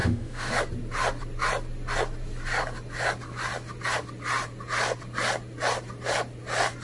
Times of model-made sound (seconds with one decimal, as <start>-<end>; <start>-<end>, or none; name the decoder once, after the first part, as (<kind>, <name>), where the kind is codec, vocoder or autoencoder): 0.0-0.5 (autoencoder, DAC-VAE)